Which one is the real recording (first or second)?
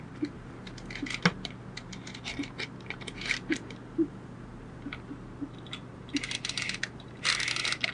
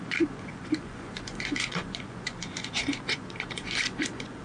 first